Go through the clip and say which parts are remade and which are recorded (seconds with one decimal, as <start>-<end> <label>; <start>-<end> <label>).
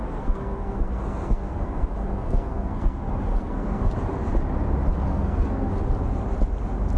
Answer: 0.0-3.9 remade; 3.9-5.1 recorded; 5.1-5.7 remade; 5.7-7.0 recorded